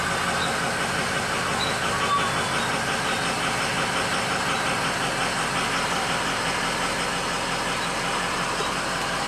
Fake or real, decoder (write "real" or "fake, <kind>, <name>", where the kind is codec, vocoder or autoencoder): real